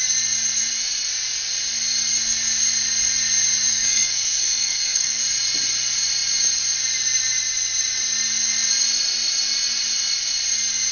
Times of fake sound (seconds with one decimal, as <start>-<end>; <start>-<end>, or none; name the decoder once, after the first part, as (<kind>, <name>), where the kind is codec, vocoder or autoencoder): 3.7-5.2 (codec, SNAC)